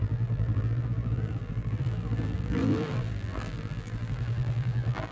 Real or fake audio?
fake